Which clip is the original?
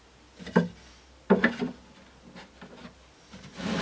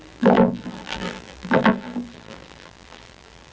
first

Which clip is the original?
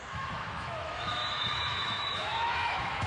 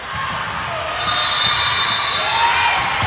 second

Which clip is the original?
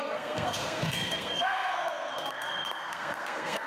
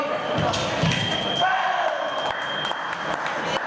second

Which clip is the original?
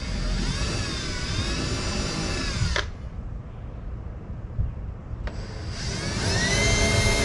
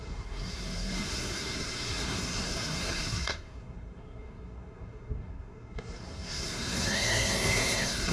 first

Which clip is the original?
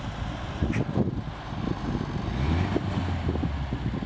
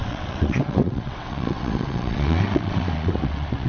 first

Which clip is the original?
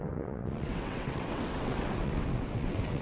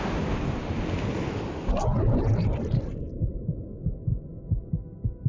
second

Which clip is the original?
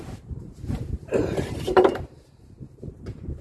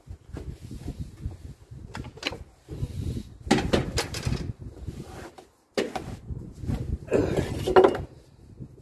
second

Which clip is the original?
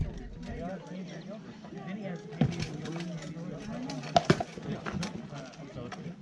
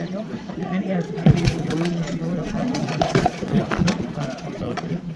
first